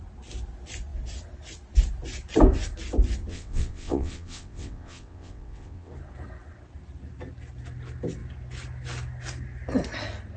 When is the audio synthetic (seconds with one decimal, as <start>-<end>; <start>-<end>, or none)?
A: 3.3-5.9

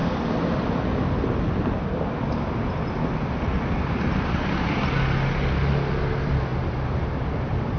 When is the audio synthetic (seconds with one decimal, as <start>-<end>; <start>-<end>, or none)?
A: none

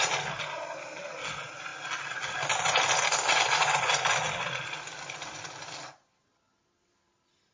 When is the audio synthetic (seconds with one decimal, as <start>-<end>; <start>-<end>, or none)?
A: none